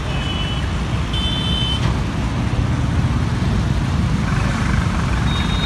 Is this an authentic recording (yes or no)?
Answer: yes